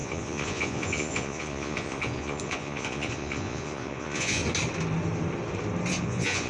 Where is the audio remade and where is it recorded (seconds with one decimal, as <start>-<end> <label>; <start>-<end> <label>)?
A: 0.0-4.4 remade; 4.4-6.0 recorded; 6.0-6.5 remade